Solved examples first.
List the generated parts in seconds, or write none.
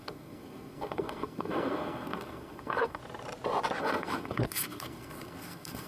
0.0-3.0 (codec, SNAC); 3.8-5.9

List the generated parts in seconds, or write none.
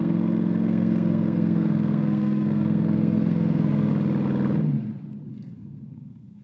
0.0-3.9 (codec, SNAC); 5.3-6.4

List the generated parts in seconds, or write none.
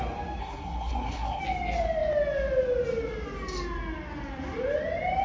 0.4-1.4 (codec, SNAC)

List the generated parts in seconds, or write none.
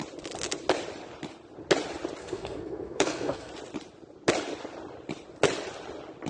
2.2-3.5 (codec, SNAC)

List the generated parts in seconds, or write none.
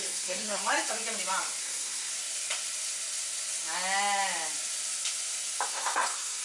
0.0-0.6 (codec, SNAC); 1.6-2.1; 5.7-6.4